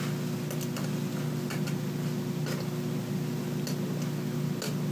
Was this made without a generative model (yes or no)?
yes